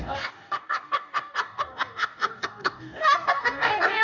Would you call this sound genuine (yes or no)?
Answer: no